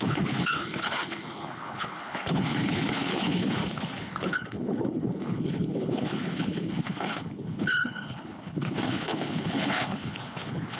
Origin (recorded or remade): remade